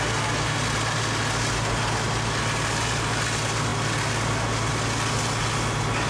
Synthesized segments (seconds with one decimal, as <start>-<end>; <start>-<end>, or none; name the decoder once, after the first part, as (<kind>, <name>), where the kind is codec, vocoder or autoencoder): none